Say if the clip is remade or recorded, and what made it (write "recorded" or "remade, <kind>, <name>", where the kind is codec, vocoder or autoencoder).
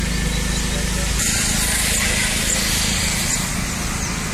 recorded